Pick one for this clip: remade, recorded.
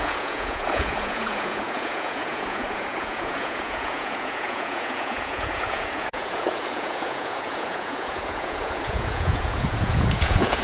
remade